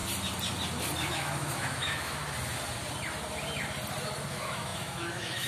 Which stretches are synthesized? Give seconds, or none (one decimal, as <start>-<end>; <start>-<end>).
1.1-2.2; 4.3-5.5